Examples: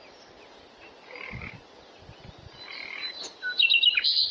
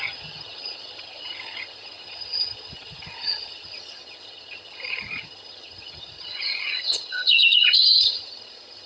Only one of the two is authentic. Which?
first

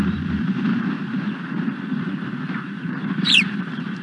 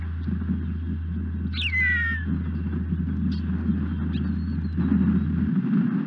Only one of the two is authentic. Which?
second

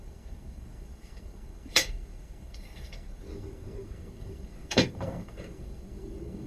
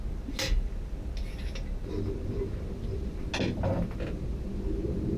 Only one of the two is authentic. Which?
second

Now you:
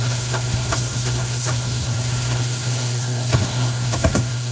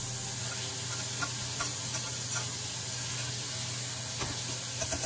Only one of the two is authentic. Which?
second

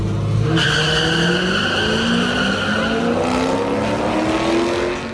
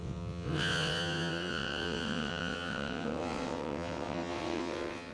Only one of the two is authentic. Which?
first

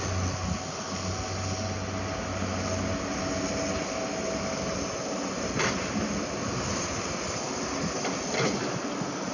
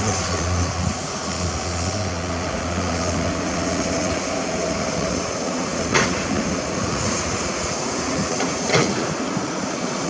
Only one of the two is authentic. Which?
first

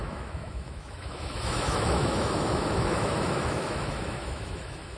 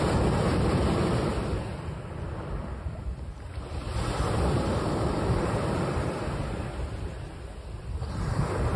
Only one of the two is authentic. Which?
second